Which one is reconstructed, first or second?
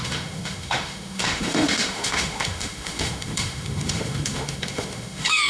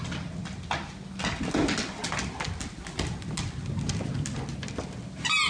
first